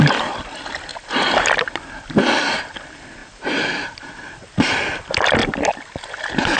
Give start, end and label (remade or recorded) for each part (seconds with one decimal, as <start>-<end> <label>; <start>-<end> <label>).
0.0-6.6 recorded